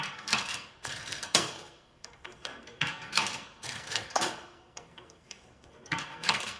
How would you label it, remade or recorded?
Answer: remade